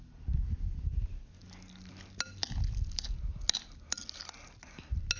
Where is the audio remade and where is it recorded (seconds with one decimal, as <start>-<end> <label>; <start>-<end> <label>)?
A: 0.0-5.2 recorded